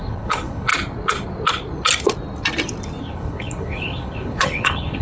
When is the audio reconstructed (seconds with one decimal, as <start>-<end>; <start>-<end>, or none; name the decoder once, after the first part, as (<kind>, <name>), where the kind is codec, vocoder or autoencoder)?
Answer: 0.0-0.7 (codec, HILCodec); 3.0-5.0